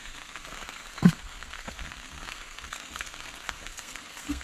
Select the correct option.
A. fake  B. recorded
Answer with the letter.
A